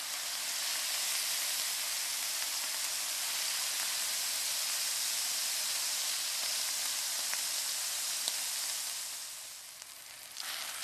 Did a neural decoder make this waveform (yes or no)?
no